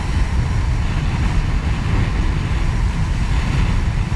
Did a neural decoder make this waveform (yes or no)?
no